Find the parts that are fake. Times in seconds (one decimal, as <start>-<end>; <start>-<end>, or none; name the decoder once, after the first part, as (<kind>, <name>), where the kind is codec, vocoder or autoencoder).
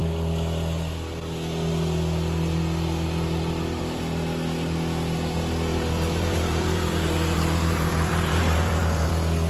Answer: 5.7-9.1 (vocoder, BigVGAN v2)